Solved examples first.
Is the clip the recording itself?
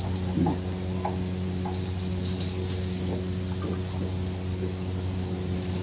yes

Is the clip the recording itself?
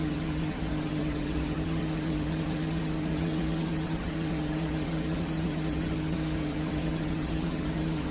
no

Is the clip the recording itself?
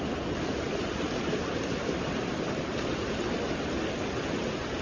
yes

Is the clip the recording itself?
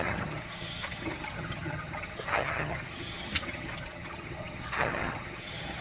no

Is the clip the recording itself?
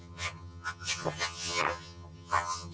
no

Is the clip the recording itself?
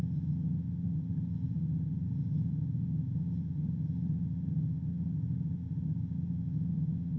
no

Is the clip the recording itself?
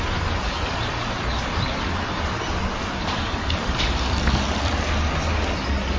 yes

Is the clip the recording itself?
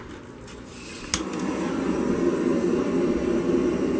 yes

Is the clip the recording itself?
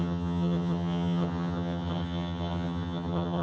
no